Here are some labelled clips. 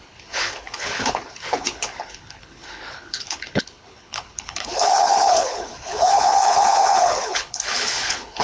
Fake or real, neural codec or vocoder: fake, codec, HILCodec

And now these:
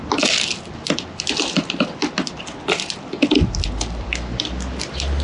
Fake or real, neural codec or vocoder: real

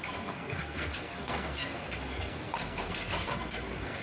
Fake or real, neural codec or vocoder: fake, codec, SNAC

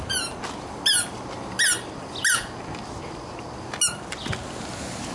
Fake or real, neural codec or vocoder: real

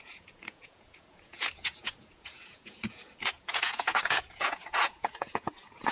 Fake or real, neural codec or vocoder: fake, vocoder, Vocos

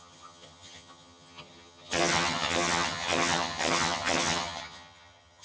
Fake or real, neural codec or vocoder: fake, vocoder, HiFi-GAN